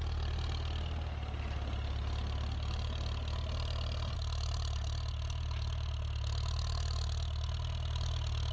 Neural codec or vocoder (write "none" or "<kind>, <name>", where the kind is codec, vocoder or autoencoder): none